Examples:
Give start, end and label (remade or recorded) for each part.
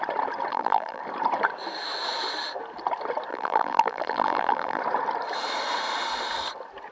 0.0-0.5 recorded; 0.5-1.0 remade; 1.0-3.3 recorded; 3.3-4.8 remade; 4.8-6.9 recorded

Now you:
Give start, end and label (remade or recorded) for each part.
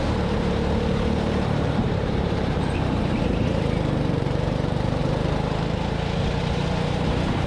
0.0-5.0 remade; 5.0-6.4 recorded; 6.4-7.5 remade